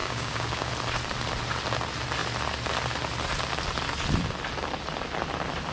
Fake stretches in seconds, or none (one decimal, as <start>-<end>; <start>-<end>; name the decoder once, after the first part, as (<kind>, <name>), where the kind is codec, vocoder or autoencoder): 0.0-0.7 (codec, DAC)